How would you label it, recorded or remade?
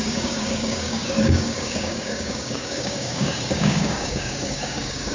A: remade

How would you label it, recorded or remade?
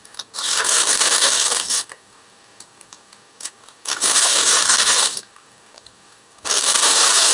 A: remade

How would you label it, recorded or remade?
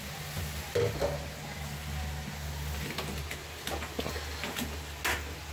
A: recorded